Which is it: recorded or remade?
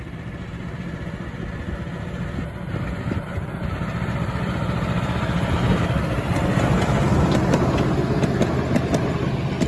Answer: recorded